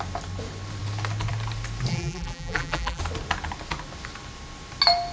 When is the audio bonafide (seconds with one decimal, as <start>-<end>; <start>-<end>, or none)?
0.0-1.9; 3.0-5.1